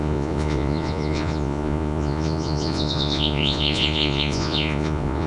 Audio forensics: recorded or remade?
remade